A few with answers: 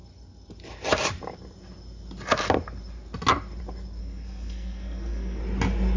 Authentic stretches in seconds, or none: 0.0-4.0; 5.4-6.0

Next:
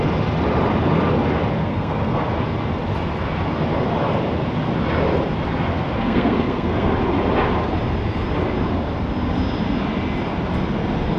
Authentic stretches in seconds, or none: 0.0-1.6; 2.2-5.7; 6.9-11.2

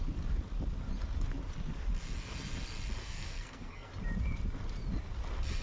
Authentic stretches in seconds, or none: 0.0-3.0; 3.9-5.6

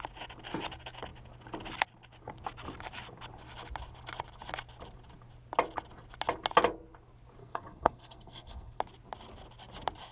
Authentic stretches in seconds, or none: 0.0-7.4; 8.8-10.1

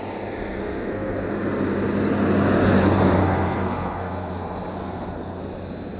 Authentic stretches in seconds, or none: 0.0-0.6; 1.4-3.2; 5.4-6.0

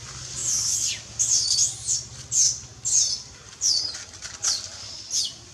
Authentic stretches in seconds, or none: 0.0-5.5

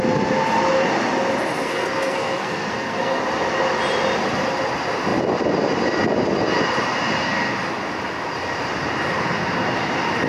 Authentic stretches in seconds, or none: 0.0-1.6; 3.2-10.3